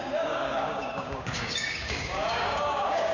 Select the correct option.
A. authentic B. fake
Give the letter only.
B